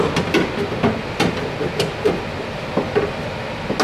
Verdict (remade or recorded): recorded